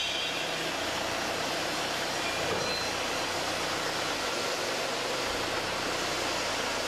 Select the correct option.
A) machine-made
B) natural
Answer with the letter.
B